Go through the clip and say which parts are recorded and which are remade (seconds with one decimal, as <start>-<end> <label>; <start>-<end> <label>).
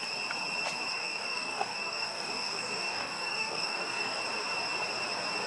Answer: 0.0-0.9 recorded; 0.9-4.2 remade; 4.2-5.5 recorded